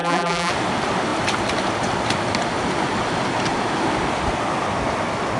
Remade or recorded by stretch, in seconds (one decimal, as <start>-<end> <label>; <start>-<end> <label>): 0.0-0.5 remade; 0.5-5.4 recorded